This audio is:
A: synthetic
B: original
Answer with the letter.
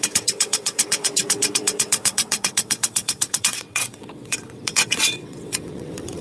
A